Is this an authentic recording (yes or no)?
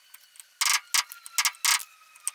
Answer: yes